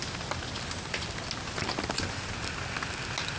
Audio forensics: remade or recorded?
recorded